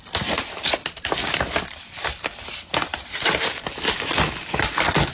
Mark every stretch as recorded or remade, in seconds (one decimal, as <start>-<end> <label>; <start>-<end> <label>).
0.0-0.8 recorded; 0.8-1.9 remade; 1.9-2.9 recorded; 2.9-4.1 remade; 4.1-5.1 recorded